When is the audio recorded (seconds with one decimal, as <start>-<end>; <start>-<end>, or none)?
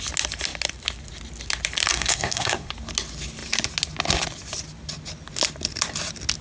0.0-1.9; 2.7-6.4